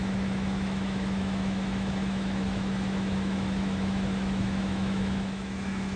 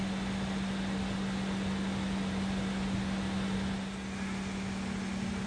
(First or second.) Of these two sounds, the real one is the second